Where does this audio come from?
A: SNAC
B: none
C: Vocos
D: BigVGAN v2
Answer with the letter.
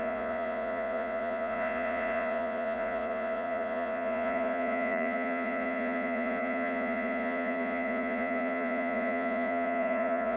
C